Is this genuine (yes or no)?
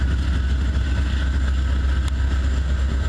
yes